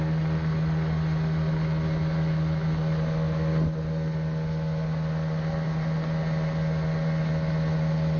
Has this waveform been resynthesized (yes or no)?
no